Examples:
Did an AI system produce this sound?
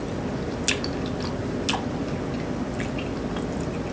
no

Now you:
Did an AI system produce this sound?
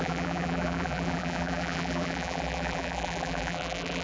yes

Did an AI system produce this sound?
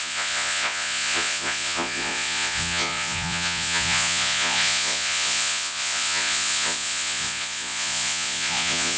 yes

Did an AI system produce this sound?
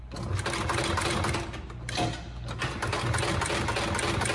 no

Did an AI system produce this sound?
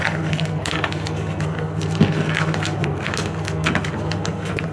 yes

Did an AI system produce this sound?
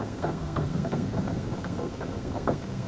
yes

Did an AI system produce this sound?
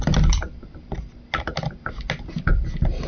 no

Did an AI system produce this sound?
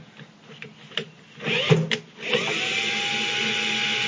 no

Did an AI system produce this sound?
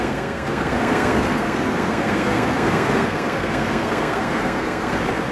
yes